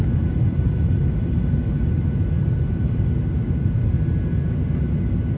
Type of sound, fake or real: real